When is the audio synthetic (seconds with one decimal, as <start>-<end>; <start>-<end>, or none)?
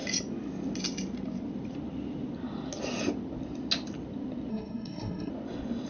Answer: 4.5-5.3